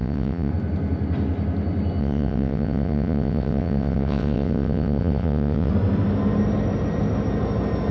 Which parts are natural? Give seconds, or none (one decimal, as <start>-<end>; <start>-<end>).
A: 0.5-2.0; 5.7-7.9